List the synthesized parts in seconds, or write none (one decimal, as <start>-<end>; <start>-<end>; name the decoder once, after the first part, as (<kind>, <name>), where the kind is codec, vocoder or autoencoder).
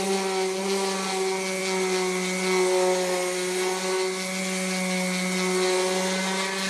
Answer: none